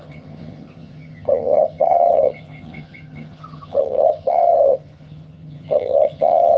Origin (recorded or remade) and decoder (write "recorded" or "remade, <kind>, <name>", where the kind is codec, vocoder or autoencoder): remade, vocoder, HiFi-GAN